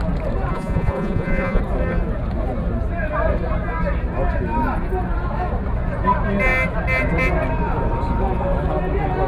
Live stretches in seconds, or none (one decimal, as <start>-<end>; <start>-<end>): 0.0-0.5; 1.6-9.3